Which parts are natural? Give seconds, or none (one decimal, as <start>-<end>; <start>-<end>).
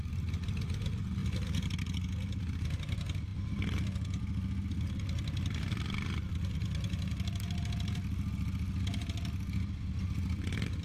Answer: 0.0-10.8